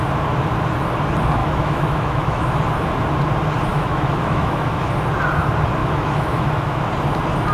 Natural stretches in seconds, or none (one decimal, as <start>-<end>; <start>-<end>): 0.0-1.4; 2.5-3.7; 4.8-5.8; 6.8-7.5